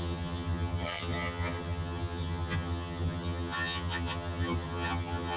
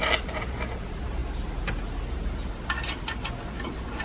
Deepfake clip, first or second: first